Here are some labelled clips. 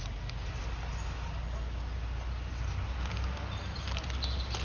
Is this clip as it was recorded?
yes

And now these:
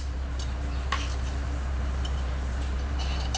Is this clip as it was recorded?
no